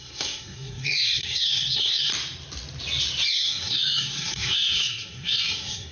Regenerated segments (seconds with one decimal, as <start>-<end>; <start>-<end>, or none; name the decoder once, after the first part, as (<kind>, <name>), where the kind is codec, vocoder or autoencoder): 0.0-2.1 (codec, SNAC); 3.3-5.9